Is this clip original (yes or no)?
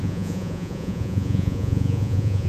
no